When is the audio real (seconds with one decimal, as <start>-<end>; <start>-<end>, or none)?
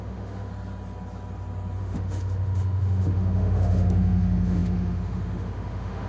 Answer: 0.5-1.8